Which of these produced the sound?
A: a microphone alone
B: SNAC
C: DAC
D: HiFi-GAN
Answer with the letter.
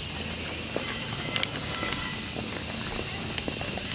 A